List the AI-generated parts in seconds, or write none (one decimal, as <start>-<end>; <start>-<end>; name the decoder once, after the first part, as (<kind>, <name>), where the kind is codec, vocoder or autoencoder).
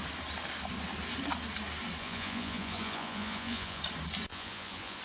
2.0-3.8 (vocoder, Vocos); 4.3-5.0